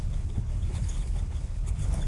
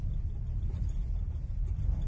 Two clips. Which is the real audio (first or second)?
second